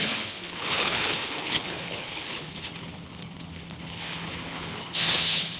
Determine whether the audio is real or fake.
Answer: fake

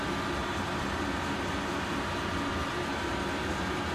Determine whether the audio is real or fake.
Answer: real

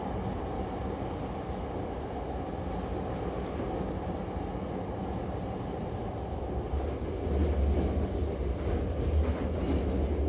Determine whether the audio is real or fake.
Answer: real